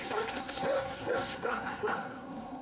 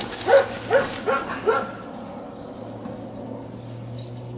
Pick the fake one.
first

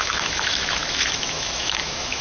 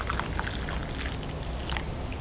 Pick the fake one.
first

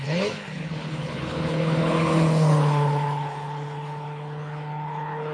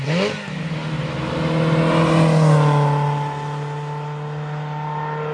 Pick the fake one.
first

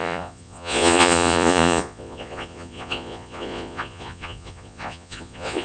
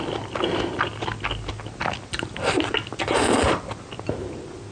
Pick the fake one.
first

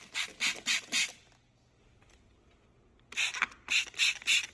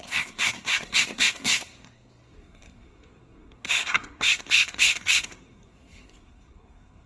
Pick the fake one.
second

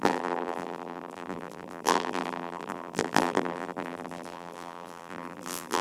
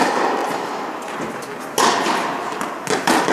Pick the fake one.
first